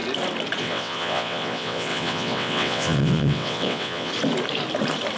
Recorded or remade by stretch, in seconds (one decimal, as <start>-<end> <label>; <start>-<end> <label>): 0.0-0.6 recorded; 0.6-4.1 remade; 4.1-5.2 recorded